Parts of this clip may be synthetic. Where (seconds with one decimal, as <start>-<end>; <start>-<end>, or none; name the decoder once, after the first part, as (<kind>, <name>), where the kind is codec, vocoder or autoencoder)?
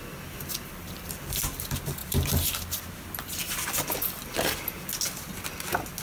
0.5-1.4 (vocoder, BigVGAN v2); 2.0-2.8